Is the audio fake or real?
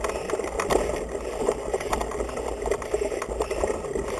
real